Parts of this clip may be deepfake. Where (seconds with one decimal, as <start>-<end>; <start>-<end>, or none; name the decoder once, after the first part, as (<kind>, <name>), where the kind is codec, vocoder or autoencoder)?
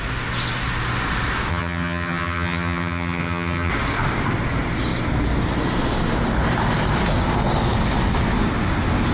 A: 1.5-3.7 (vocoder, HiFi-GAN)